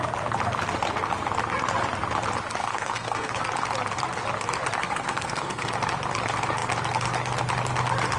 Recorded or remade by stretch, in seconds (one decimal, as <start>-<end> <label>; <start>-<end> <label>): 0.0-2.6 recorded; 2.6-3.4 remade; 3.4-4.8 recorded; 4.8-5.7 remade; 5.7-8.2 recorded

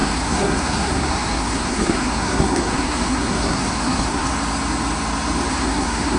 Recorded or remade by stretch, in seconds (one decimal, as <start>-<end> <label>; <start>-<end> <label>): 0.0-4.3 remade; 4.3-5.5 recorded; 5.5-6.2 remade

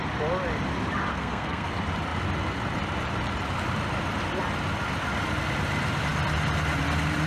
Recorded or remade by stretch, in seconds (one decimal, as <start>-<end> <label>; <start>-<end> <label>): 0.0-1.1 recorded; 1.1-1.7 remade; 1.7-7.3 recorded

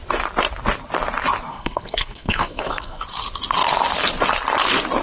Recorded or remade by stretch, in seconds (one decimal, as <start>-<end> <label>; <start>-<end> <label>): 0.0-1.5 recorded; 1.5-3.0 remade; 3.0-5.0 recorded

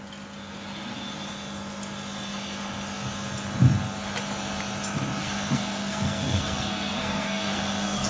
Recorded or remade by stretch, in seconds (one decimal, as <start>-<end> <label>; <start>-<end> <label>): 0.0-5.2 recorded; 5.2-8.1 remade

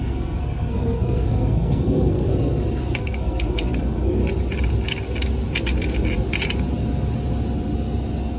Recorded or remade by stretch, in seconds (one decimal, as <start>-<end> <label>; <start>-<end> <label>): 0.0-2.3 remade; 2.3-3.0 recorded; 3.0-4.2 remade; 4.2-8.4 recorded